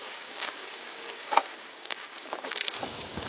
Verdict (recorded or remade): remade